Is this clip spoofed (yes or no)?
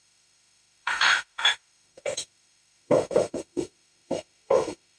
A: yes